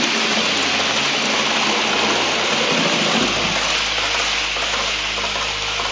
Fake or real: real